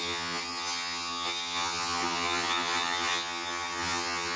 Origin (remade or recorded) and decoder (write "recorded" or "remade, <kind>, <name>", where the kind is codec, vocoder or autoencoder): remade, vocoder, HiFi-GAN